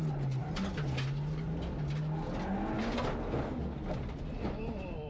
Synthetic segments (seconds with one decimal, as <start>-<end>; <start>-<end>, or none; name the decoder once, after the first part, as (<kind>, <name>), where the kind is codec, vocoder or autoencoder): none